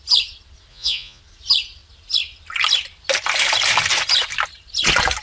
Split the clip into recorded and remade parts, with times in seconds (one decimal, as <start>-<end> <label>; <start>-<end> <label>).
0.0-0.7 recorded; 0.7-1.2 remade; 1.2-5.2 recorded